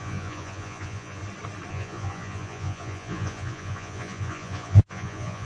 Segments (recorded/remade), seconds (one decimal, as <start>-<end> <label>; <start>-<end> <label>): 0.0-1.2 remade; 1.2-1.7 recorded; 1.7-5.5 remade